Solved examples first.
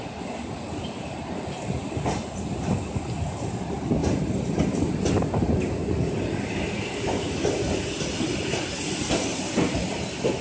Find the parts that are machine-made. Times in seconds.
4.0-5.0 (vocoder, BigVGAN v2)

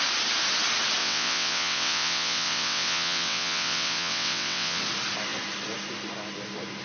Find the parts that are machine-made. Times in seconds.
1.0-4.8 (vocoder, WaveNeXt)

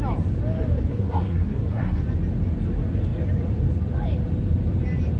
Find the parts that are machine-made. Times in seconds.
0.9-2.0 (codec, SNAC)

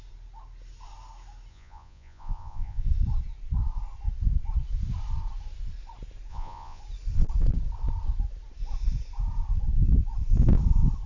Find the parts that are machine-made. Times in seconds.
1.5-2.9 (vocoder, Vocos); 6.3-6.8

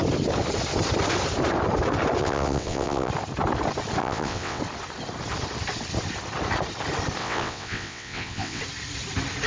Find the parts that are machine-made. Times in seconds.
2.2-3.1 (vocoder, WaveNeXt); 4.0-4.6; 7.2-8.6

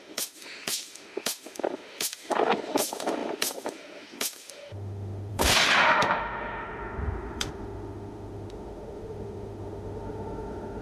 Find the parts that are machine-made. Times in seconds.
0.0-10.8 (autoencoder, DAC-VAE)